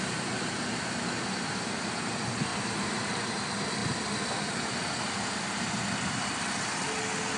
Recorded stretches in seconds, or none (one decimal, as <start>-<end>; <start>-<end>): 0.0-0.7; 1.5-2.5; 3.1-7.4